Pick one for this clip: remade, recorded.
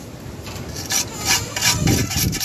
recorded